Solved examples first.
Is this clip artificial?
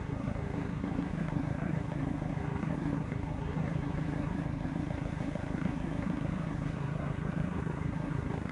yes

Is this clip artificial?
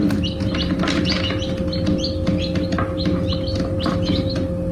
no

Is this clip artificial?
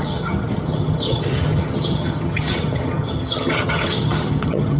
yes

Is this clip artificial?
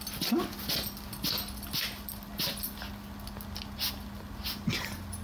no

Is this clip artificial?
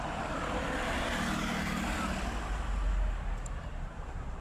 no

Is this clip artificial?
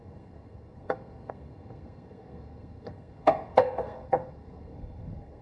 yes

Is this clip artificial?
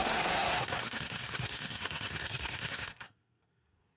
yes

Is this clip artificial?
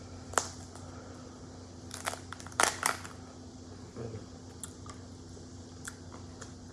no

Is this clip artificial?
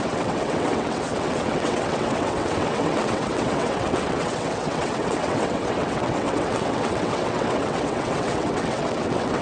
yes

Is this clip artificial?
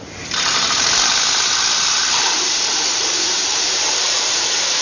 yes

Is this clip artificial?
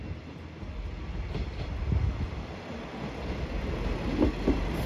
no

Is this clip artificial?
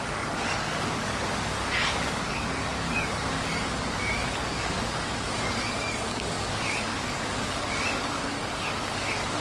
yes